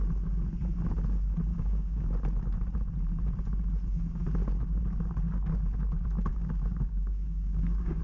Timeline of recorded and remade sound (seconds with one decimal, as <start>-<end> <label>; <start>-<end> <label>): 0.0-1.5 recorded; 1.5-2.1 remade; 2.1-6.3 recorded; 6.3-8.0 remade